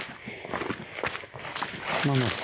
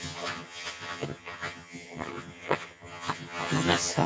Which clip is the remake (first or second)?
second